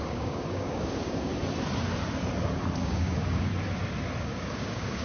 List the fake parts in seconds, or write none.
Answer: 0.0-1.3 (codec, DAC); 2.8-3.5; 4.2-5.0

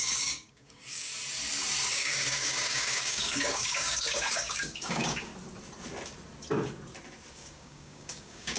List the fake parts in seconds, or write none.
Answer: 0.0-1.1 (codec, DAC); 1.9-5.3; 7.3-8.6